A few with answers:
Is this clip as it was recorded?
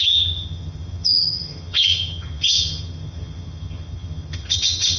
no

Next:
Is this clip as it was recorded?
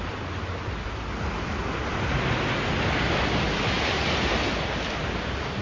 yes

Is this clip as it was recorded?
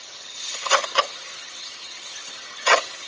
no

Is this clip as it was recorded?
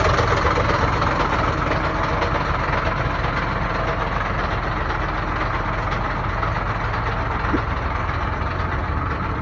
yes